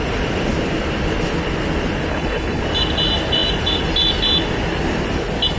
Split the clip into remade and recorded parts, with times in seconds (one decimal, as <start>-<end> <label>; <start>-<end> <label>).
0.0-2.1 recorded; 2.1-2.6 remade; 2.6-5.6 recorded